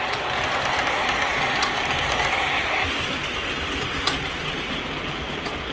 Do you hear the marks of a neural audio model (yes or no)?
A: no